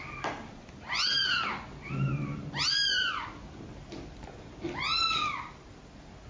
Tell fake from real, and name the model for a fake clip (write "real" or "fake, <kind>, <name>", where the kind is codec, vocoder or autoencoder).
real